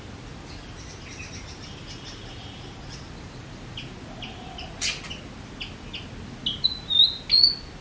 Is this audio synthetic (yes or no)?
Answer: no